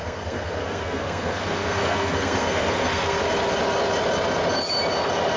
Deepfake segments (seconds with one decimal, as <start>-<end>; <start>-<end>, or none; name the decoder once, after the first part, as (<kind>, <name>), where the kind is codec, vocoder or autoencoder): 0.0-3.2 (codec, SNAC)